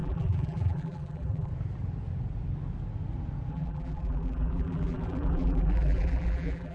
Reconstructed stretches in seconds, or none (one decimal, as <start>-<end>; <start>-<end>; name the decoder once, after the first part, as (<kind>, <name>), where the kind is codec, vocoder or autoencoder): 0.0-1.5 (vocoder, BigVGAN v2); 3.5-6.7